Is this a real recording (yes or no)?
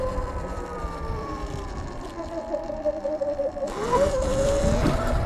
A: no